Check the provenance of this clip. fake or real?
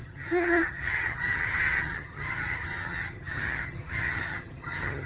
fake